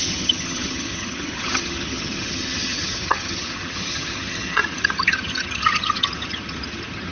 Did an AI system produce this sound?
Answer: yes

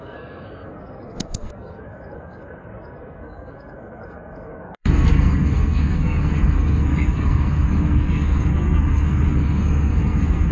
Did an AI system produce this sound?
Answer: yes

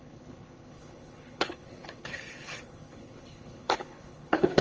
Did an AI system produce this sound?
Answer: yes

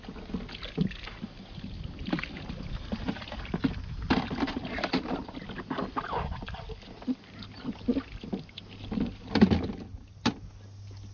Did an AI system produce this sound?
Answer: no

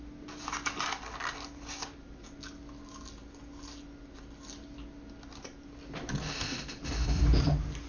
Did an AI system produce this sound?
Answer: no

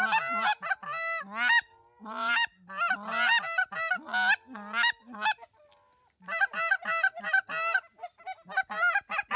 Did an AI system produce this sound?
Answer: no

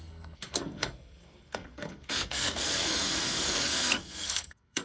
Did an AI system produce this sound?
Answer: yes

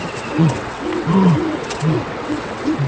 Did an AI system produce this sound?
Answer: yes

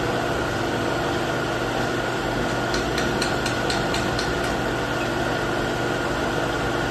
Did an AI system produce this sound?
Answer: no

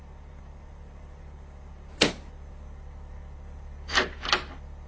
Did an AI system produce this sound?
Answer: no